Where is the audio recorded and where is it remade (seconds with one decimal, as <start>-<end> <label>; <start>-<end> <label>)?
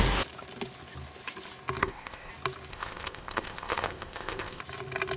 0.0-1.8 recorded; 1.8-2.3 remade; 2.3-2.7 recorded; 2.7-4.6 remade; 4.6-5.2 recorded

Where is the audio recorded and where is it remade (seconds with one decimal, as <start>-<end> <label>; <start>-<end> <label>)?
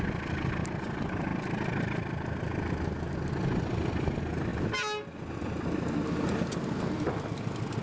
0.0-7.8 recorded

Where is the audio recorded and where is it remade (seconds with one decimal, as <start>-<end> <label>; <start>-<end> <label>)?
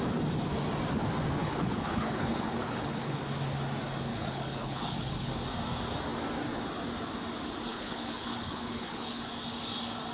0.0-1.4 recorded; 1.4-3.2 remade; 3.2-4.1 recorded; 4.1-5.3 remade; 5.3-7.7 recorded; 7.7-9.3 remade; 9.3-10.1 recorded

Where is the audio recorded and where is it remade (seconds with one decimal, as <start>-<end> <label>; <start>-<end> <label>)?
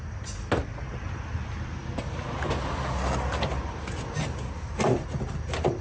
0.0-0.6 recorded; 0.6-2.5 remade; 2.5-5.8 recorded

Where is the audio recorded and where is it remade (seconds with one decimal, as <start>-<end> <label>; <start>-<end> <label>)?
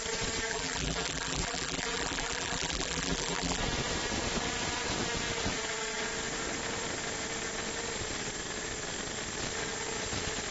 0.0-0.5 recorded; 0.5-3.6 remade; 3.6-10.5 recorded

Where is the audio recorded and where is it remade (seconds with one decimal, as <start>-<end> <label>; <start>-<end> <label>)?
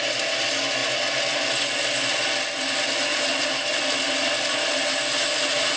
0.0-5.8 recorded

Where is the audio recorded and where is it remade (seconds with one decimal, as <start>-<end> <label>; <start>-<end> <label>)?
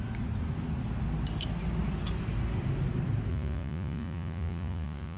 0.0-3.3 recorded; 3.3-5.2 remade